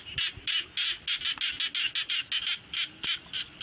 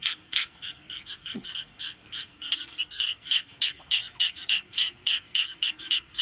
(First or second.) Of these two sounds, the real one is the first